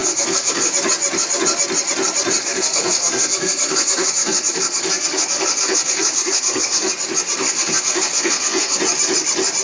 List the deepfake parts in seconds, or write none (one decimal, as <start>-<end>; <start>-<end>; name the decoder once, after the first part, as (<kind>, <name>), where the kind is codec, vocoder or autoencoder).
0.0-0.7 (codec, SNAC); 2.4-6.9; 7.4-8.8